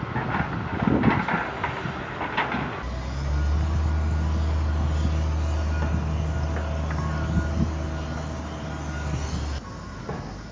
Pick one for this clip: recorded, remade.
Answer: recorded